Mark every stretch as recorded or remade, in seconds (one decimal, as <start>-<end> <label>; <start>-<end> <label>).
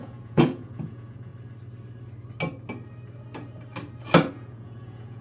0.0-1.3 remade; 1.3-4.3 recorded; 4.3-5.2 remade